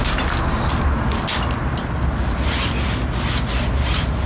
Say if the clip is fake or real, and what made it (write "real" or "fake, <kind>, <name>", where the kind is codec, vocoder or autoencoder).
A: real